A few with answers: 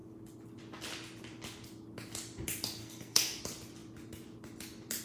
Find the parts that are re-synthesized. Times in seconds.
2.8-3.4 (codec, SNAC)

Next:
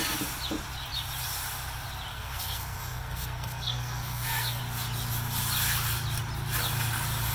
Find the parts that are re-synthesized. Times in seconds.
2.1-4.6 (codec, SNAC)

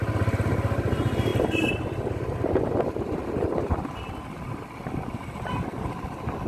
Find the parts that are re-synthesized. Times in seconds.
none

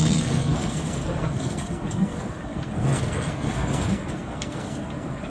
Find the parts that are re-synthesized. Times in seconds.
0.0-5.3 (codec, SNAC)